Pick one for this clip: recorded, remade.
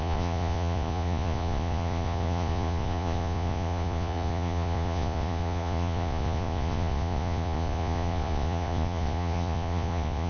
remade